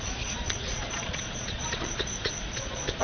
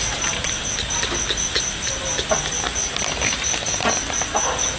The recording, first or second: second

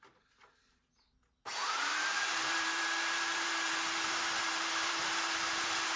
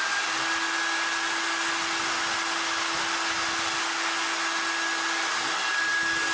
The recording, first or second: second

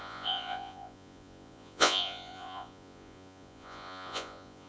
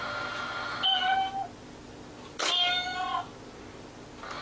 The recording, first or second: second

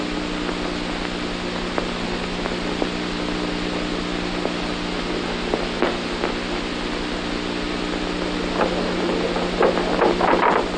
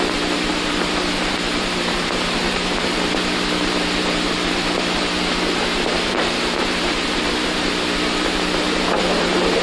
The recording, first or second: first